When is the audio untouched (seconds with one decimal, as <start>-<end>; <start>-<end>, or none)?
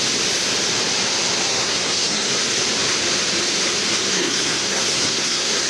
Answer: 0.0-1.5; 2.3-4.1